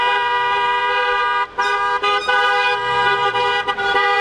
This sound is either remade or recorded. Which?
remade